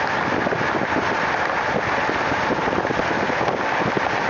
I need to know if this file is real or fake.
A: real